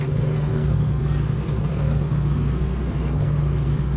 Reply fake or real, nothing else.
fake